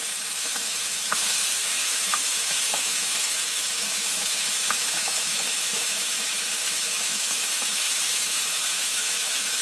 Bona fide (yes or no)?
no